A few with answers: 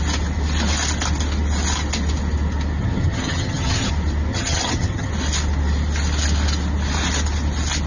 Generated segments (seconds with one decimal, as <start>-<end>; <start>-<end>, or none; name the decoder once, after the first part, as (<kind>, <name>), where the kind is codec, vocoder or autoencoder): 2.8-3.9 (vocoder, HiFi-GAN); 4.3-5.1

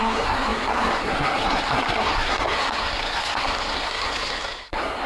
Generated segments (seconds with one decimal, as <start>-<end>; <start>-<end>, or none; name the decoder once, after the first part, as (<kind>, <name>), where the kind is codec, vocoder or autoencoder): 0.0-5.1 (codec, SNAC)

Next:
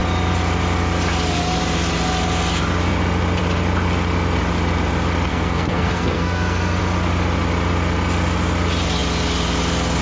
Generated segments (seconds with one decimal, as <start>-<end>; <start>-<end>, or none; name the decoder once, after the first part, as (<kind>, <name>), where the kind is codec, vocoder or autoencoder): 5.3-6.8 (codec, SNAC)

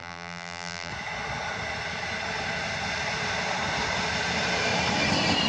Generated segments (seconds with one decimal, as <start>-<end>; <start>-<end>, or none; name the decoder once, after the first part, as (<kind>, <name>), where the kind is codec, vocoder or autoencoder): 0.0-0.9 (vocoder, BigVGAN v2)

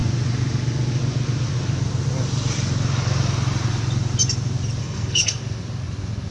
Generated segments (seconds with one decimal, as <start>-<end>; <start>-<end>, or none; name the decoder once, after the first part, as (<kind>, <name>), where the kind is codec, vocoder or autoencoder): 4.8-5.4 (codec, SNAC)